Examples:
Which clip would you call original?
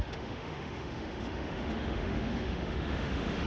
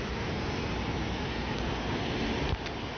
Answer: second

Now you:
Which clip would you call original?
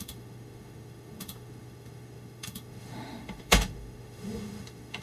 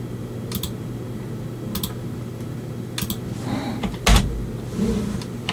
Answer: second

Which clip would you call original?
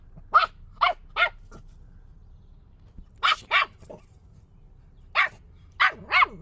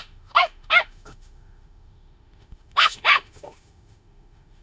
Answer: first